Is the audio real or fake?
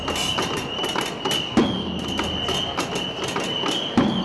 real